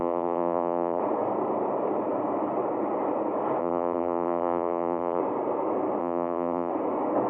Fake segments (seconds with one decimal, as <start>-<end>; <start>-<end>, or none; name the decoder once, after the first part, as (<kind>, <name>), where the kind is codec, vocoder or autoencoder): 0.0-1.0 (vocoder, BigVGAN v2); 3.6-5.2; 6.0-6.7